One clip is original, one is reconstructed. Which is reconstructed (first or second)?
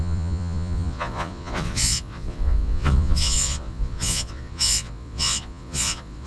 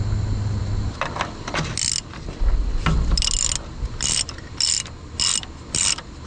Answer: first